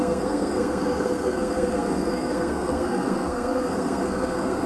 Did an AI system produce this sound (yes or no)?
yes